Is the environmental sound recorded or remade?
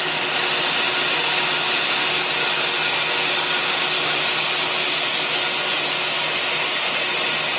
recorded